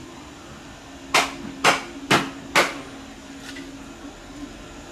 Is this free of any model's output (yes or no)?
yes